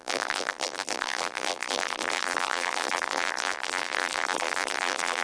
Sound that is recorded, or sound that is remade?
remade